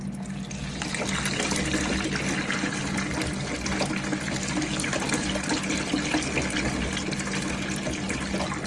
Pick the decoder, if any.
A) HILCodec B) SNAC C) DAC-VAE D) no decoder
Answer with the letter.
D